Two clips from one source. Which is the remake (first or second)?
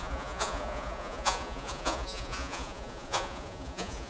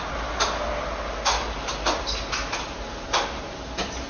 first